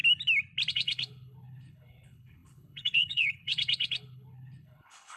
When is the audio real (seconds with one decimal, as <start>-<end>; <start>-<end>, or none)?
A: 0.0-0.7